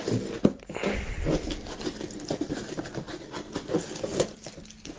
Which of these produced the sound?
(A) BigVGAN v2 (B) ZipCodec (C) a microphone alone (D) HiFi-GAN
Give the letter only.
C